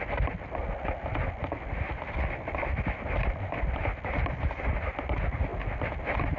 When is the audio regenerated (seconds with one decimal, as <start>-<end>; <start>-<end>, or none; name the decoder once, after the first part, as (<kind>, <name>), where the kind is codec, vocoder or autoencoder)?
none